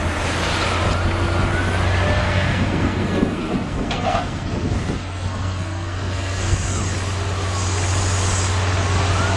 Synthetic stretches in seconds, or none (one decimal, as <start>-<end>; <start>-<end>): 2.2-6.8